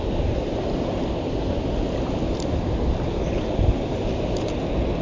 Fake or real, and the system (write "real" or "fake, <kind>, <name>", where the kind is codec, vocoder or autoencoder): real